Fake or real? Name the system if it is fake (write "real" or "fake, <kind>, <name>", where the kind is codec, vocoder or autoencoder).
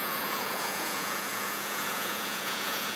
fake, vocoder, Vocos